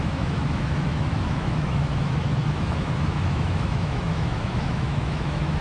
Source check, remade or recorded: remade